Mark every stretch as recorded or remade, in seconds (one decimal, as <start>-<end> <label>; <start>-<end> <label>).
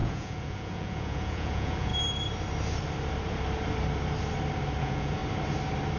0.0-1.9 remade; 1.9-4.8 recorded; 4.8-5.2 remade; 5.2-6.0 recorded